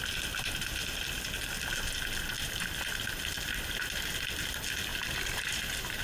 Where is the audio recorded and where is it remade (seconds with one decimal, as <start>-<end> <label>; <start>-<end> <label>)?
0.0-4.9 recorded; 4.9-6.0 remade